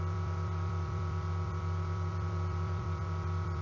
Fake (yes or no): yes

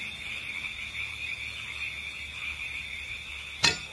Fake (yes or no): no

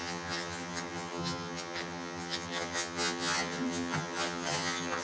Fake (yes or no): yes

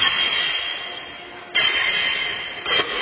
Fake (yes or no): no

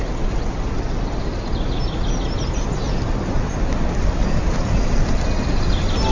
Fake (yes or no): no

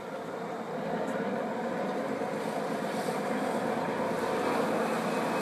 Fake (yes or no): no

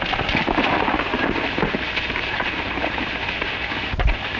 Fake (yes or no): no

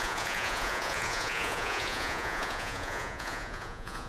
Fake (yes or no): yes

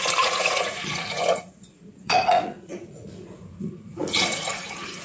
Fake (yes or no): yes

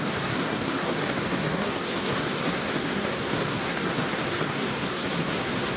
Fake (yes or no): yes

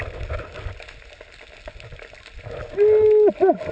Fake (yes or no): no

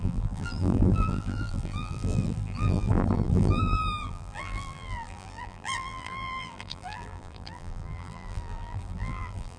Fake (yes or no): yes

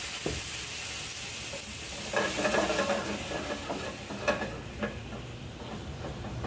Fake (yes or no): no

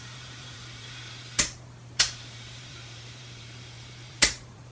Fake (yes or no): yes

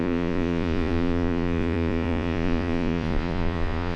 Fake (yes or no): yes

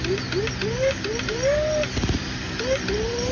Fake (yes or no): no